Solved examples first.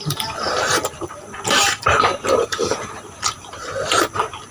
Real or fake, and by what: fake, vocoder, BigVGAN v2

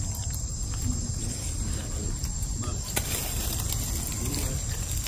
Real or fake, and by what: real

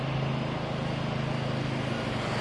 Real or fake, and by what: real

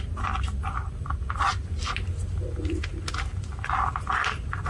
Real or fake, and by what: real